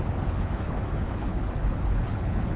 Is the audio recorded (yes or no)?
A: no